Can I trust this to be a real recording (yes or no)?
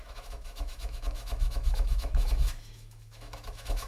no